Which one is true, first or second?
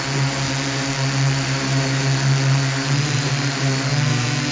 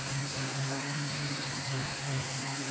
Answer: first